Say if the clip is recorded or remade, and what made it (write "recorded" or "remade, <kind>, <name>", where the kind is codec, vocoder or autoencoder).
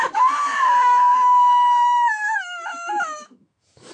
remade, autoencoder, DAC-VAE